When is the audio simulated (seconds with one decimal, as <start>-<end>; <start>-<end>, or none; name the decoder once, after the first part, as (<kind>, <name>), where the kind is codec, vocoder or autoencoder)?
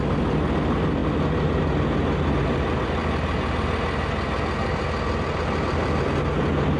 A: none